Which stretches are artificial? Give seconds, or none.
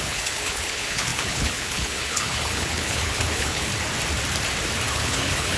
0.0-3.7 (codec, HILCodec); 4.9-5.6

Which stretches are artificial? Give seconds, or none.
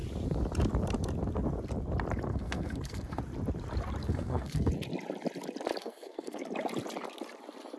2.3-3.2 (codec, SNAC); 4.0-4.7; 5.8-6.4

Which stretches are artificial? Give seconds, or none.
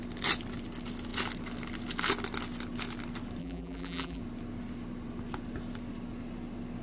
3.4-4.2 (vocoder, BigVGAN v2)